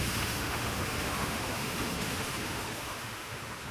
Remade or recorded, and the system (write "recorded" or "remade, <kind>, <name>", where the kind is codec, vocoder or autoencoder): remade, autoencoder, DAC-VAE